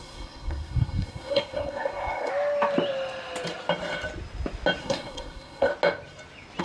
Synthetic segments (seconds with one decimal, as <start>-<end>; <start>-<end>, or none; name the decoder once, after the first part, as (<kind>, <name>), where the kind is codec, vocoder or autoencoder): 0.0-2.3 (codec, SNAC); 4.8-5.7